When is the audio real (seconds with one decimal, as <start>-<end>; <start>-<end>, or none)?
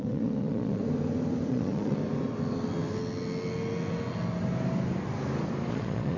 0.8-1.5; 2.0-5.7